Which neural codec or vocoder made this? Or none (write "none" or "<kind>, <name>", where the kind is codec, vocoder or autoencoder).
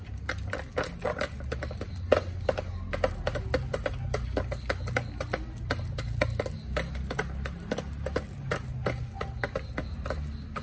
none